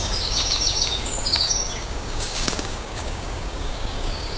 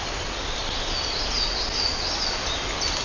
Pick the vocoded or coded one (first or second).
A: first